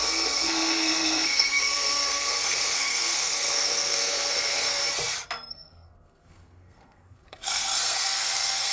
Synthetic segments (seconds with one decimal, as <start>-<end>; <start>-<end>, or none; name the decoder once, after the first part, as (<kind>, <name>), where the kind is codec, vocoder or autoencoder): 0.0-4.8 (codec, SNAC); 5.5-8.7